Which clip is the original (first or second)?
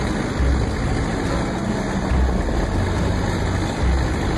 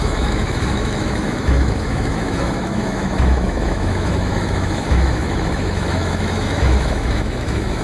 first